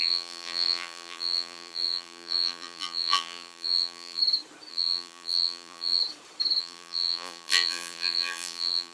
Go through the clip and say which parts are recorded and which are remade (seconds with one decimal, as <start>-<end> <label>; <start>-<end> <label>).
0.0-4.2 remade; 4.2-4.7 recorded; 4.7-6.0 remade; 6.0-6.6 recorded; 6.6-8.9 remade